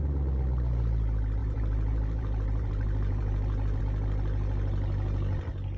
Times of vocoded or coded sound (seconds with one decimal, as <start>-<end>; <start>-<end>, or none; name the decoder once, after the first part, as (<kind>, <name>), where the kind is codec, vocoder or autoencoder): 1.4-3.8 (vocoder, BigVGAN v2)

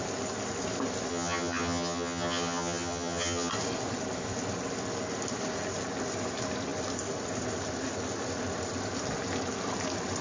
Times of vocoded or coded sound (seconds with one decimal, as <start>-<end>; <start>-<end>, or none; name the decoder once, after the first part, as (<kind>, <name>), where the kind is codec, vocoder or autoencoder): 1.1-3.5 (vocoder, HiFi-GAN)

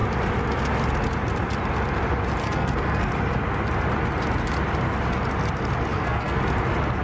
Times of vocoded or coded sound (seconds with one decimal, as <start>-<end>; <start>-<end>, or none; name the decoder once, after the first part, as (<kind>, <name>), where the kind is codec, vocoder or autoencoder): 2.4-3.1 (codec, SNAC); 5.9-6.4